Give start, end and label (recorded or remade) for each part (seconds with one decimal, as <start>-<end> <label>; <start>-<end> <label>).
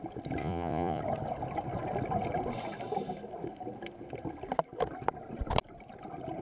0.0-0.4 recorded; 0.4-1.0 remade; 1.0-6.4 recorded